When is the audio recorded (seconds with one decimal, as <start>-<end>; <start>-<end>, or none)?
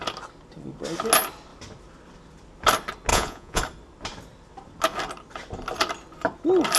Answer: 0.0-3.1; 3.6-6.8